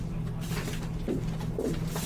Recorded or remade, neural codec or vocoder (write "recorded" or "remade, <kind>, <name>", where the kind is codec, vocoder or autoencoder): recorded